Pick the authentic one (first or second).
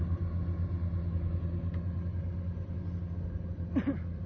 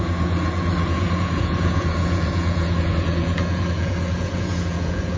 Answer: first